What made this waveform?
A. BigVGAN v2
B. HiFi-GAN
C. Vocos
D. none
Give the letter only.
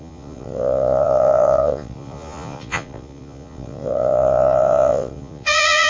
C